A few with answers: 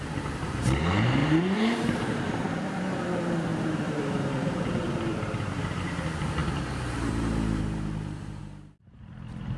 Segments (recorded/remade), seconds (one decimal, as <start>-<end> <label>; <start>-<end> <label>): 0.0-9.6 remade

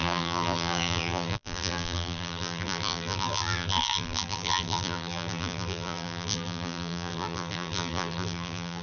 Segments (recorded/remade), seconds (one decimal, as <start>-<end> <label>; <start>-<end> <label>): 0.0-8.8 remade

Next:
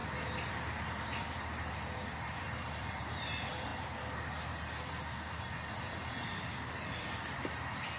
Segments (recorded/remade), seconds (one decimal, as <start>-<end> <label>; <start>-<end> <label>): 0.0-0.5 recorded; 0.5-3.7 remade; 3.7-6.7 recorded; 6.7-8.0 remade